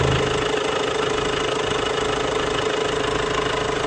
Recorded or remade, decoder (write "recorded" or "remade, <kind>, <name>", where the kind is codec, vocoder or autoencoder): recorded